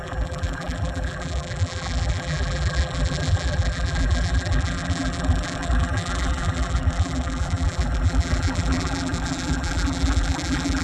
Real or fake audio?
fake